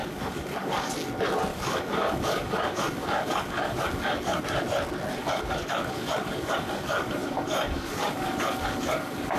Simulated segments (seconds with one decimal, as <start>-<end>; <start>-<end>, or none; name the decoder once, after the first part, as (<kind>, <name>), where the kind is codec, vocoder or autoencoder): 0.0-0.9 (codec, DAC); 1.5-4.4; 5.2-9.4